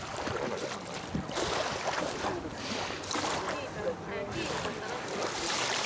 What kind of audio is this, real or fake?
real